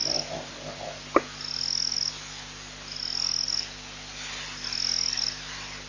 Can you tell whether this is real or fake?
real